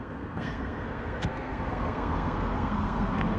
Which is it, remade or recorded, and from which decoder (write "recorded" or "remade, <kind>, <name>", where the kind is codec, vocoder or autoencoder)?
remade, codec, SNAC